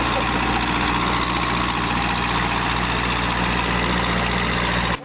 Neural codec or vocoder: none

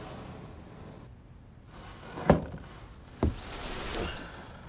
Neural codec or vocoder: none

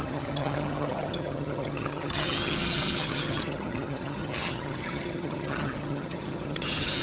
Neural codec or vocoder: vocoder, HiFi-GAN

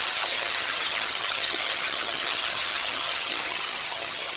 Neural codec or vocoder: vocoder, HiFi-GAN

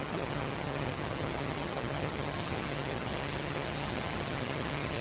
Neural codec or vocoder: vocoder, HiFi-GAN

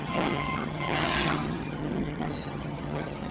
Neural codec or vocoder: vocoder, HiFi-GAN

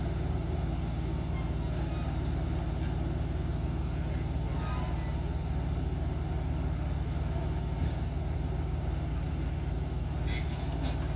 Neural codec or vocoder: none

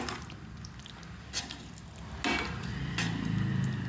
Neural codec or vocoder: none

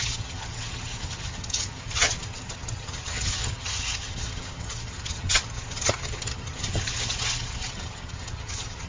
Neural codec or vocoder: vocoder, HiFi-GAN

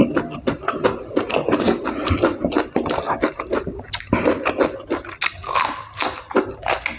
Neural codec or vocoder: none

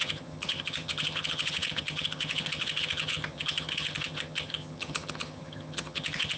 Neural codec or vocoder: vocoder, HiFi-GAN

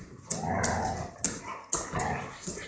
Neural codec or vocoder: none